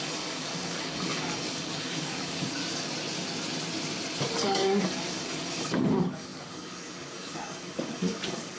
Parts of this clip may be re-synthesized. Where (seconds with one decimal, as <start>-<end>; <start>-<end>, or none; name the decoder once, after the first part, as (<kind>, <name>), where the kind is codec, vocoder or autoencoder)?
0.0-2.6 (codec, DAC); 4.3-8.6